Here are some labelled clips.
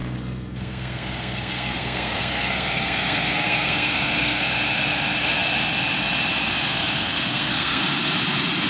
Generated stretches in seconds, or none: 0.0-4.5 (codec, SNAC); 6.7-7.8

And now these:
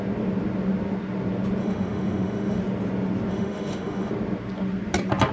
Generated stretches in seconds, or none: 1.6-2.6 (autoencoder, DAC-VAE); 3.3-4.1

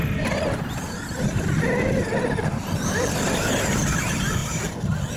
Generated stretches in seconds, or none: none

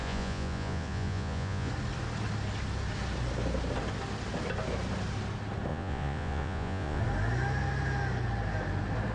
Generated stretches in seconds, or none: 0.0-1.7 (vocoder, Vocos); 5.7-7.0

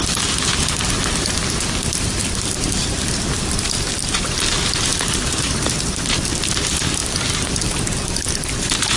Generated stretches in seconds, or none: none

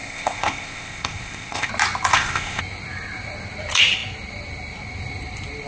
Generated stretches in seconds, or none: 0.0-1.7 (codec, ZipCodec); 2.1-2.6

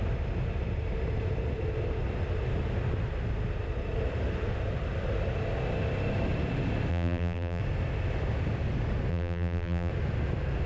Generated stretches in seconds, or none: 6.9-7.6 (vocoder, BigVGAN v2); 9.1-9.9